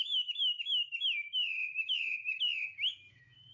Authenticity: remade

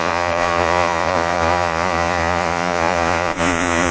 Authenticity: remade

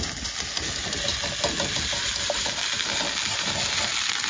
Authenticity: recorded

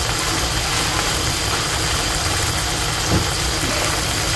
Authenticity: recorded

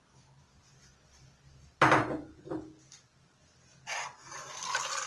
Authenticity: recorded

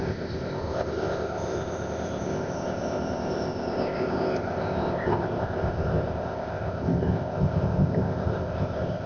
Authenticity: remade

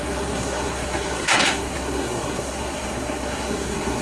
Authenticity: remade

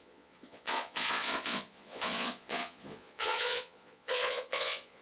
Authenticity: remade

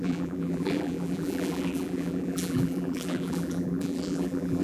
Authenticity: remade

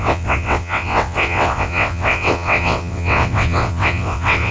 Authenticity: remade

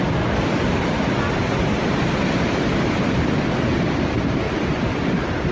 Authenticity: recorded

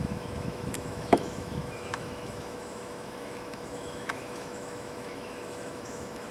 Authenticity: remade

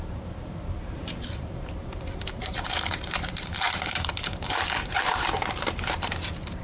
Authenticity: remade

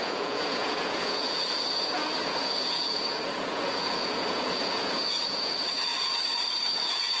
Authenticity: remade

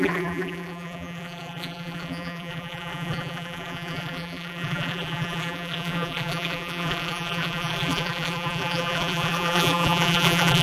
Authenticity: remade